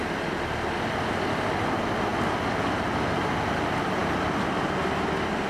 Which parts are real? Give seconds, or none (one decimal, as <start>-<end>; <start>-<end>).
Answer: 0.0-5.5